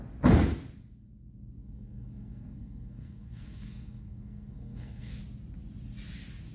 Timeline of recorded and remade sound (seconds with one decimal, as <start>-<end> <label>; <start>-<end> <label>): 0.0-1.6 recorded; 1.6-5.2 remade; 5.2-6.5 recorded